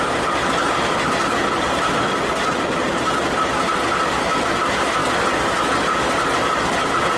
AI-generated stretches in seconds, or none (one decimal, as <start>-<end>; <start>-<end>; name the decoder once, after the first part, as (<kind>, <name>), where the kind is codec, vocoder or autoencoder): none